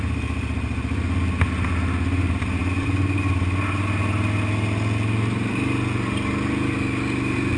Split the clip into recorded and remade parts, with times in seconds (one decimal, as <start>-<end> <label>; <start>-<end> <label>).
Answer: 0.0-7.6 recorded